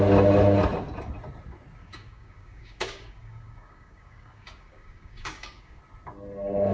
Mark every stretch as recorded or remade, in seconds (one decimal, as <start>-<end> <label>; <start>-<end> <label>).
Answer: 0.0-1.8 recorded; 1.8-5.8 remade; 5.8-6.7 recorded